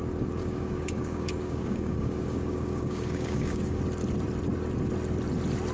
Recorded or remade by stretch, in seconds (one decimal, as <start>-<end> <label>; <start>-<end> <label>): 0.0-0.4 recorded; 0.4-3.8 remade; 3.8-5.7 recorded